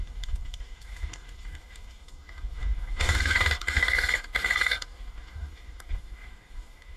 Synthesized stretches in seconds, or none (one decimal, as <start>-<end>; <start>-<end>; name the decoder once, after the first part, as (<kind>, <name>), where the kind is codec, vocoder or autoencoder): 0.0-7.0 (codec, DAC)